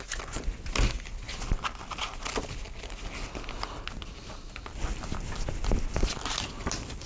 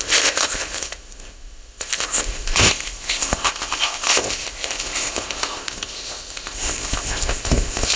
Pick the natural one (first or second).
first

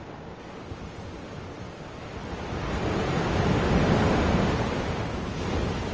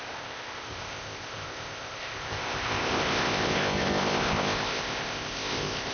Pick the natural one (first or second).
first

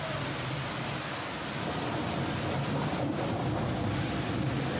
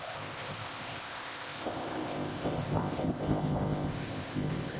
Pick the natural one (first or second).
first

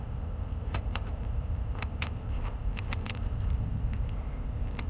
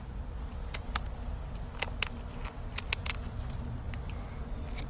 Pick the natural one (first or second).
second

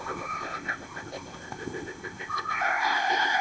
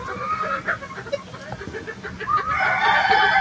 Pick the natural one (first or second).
second